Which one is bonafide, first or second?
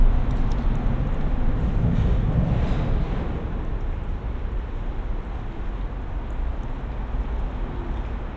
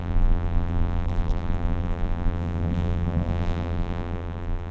first